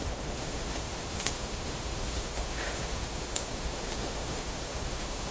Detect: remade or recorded remade